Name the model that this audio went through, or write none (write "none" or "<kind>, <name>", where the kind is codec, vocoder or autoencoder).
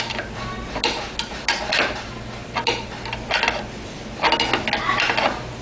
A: none